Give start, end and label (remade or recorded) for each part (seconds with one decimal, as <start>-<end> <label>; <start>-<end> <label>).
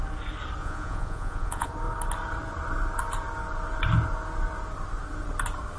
0.0-0.6 recorded; 0.6-1.7 remade; 1.7-5.8 recorded